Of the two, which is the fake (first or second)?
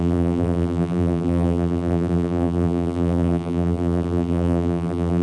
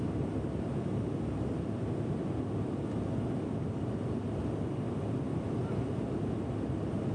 first